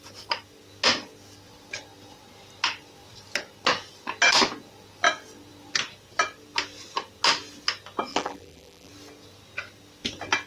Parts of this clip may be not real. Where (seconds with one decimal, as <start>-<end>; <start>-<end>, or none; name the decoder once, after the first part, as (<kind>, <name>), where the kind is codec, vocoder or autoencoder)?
8.1-8.9 (vocoder, BigVGAN v2)